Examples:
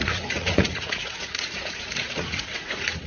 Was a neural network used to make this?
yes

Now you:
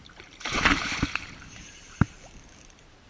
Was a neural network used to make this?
yes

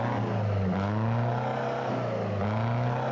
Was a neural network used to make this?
no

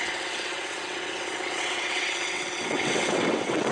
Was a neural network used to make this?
yes